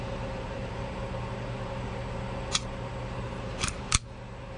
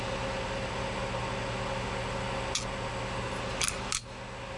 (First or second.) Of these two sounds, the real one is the second